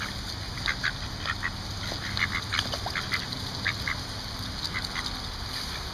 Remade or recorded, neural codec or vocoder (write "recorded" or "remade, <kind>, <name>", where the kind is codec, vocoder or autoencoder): recorded